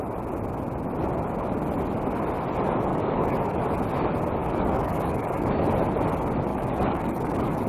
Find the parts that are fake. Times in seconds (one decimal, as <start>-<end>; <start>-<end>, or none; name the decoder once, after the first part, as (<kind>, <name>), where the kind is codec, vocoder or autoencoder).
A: 2.9-3.6 (codec, DAC); 4.4-5.7; 6.5-7.7